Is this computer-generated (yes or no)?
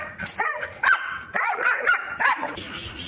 yes